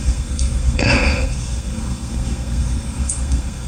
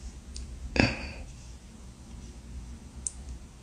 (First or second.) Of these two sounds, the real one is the second